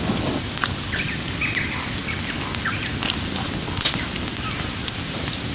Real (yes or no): yes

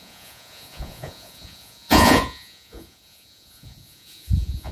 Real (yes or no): no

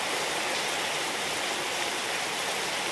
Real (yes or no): yes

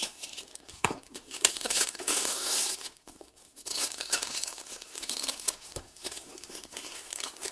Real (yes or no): no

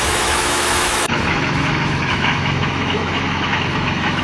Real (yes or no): no